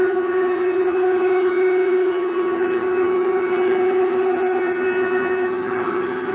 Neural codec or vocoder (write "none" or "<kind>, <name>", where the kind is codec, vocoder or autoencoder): vocoder, HiFi-GAN